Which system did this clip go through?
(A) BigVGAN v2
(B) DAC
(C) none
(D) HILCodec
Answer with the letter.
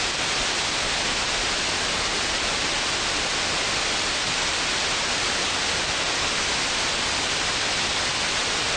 C